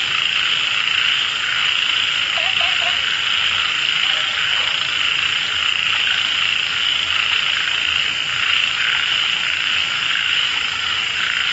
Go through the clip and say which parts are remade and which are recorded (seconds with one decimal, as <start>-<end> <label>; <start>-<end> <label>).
0.0-10.1 recorded; 10.1-11.0 remade; 11.0-11.5 recorded